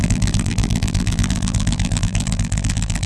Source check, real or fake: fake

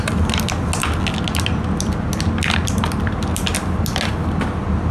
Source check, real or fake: real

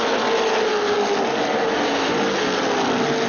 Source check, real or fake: real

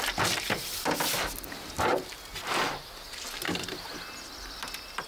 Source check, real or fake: real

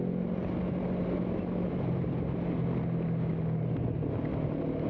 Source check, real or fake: real